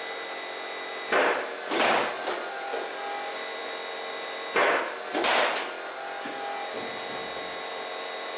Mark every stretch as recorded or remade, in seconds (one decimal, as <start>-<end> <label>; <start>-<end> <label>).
0.0-8.4 recorded